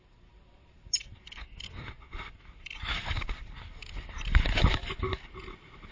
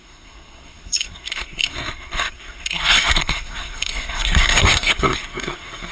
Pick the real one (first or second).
first